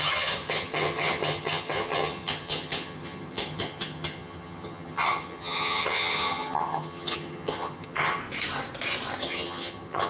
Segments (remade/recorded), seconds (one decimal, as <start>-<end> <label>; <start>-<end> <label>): 0.0-8.2 remade; 8.2-9.2 recorded; 9.2-10.1 remade